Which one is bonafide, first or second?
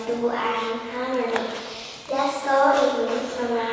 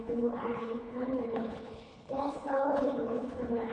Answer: first